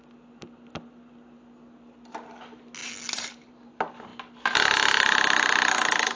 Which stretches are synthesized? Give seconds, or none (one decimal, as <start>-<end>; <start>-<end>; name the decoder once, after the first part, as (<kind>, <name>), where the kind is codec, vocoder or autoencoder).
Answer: none